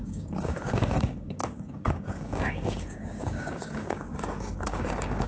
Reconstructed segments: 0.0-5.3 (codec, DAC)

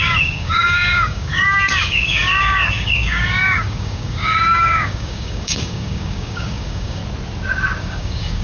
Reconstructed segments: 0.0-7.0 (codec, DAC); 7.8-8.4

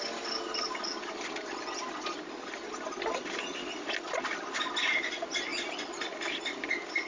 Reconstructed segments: none

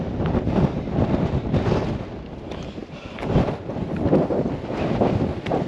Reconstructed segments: none